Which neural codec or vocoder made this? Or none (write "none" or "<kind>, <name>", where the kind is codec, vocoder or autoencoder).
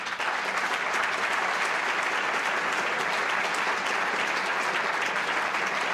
none